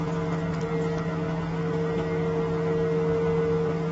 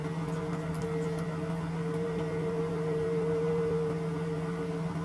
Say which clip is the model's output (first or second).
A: second